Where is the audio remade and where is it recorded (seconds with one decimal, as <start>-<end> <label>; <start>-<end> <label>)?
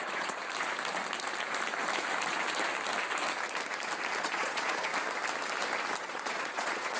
0.0-0.4 remade; 0.4-4.2 recorded; 4.2-4.9 remade; 4.9-6.0 recorded; 6.0-7.0 remade